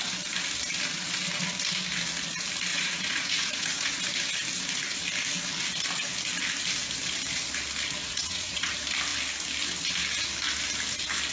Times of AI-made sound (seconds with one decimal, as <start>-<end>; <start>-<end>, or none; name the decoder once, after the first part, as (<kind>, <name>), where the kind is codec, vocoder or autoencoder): 2.7-4.0 (vocoder, Vocos); 8.0-8.7